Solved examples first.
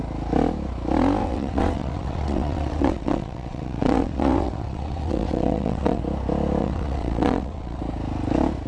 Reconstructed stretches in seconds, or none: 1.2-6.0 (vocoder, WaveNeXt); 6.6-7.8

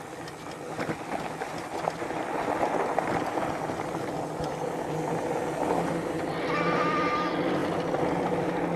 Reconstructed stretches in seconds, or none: none

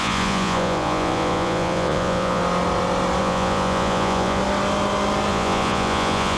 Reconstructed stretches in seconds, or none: 0.0-2.4 (vocoder, Vocos); 3.2-4.4; 5.3-6.4